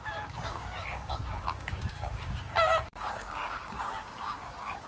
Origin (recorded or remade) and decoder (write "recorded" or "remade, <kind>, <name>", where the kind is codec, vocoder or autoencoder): remade, codec, DAC